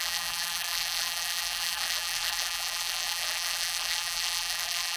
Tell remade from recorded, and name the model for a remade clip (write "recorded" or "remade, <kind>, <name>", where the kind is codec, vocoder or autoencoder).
remade, vocoder, BigVGAN v2